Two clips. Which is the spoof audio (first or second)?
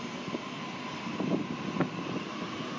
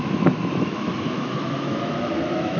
second